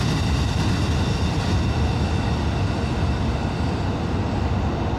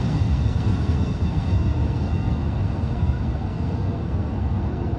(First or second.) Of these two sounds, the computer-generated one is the second